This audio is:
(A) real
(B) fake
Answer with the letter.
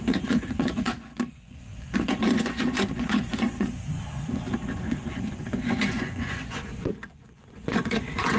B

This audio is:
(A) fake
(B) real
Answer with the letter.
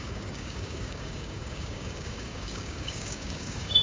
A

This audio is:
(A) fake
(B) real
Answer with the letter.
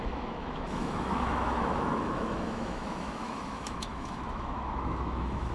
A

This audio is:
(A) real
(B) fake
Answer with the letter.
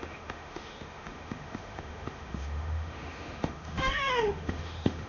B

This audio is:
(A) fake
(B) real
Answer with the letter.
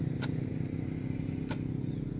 B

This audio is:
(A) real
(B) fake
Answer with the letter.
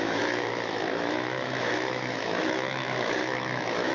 B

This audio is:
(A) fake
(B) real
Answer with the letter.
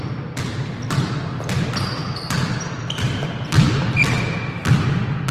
B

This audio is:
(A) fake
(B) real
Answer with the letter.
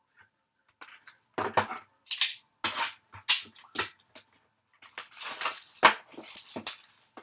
B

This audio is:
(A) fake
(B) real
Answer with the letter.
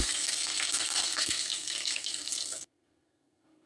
A